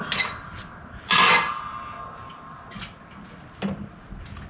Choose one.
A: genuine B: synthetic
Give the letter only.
A